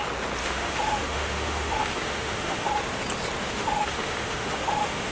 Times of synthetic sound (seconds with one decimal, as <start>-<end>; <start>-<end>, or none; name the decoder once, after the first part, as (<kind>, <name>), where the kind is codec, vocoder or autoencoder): 0.4-2.7 (autoencoder, DAC-VAE); 3.4-5.1